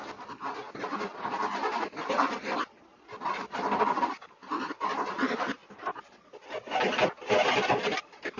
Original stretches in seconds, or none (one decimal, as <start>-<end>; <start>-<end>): 0.0-8.4